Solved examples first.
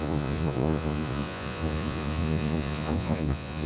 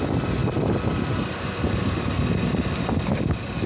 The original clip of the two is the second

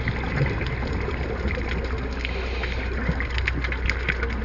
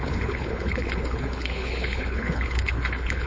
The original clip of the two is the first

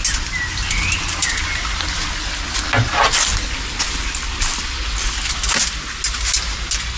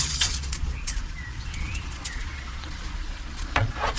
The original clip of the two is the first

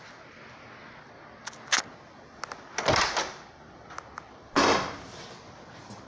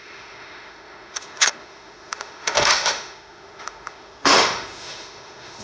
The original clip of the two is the first